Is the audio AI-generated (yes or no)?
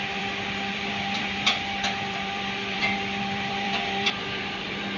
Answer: yes